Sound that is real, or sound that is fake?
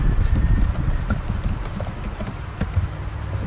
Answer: fake